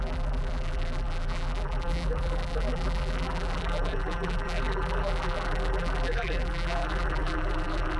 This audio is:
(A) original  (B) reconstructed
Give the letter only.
B